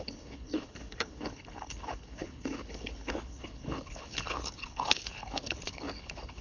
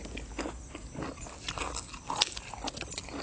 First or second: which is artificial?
first